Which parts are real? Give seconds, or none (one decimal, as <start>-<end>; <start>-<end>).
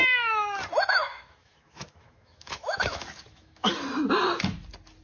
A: 0.0-1.0; 3.7-5.0